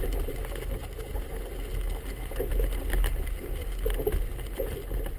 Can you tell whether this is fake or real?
real